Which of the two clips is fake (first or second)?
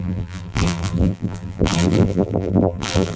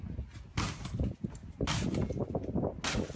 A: first